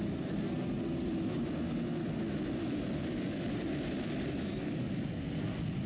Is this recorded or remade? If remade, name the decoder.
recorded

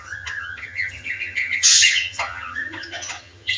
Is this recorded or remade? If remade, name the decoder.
remade, vocoder, HiFi-GAN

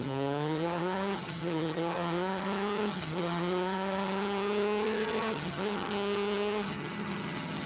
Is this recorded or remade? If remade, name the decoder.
remade, vocoder, HiFi-GAN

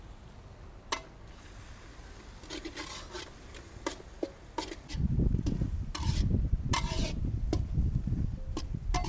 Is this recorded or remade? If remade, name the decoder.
recorded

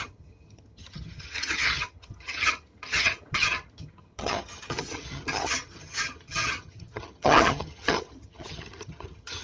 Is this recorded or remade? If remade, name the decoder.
remade, vocoder, HiFi-GAN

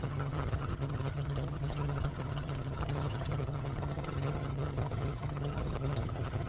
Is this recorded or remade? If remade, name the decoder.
remade, vocoder, HiFi-GAN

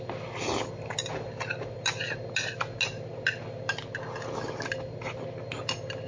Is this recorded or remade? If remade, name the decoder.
recorded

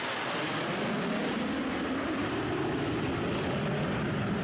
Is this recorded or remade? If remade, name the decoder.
recorded